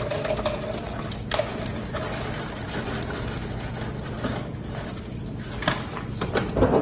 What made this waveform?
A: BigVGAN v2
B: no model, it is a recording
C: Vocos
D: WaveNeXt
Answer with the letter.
B